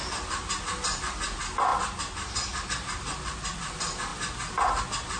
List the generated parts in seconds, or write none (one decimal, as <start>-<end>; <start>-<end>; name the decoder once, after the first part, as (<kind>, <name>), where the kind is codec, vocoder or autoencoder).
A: none